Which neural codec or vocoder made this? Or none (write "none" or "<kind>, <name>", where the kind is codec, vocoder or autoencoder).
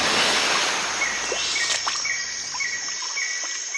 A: none